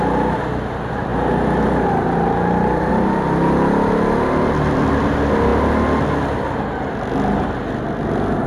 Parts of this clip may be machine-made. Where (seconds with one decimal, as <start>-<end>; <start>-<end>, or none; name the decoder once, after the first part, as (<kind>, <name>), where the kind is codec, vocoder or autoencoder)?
none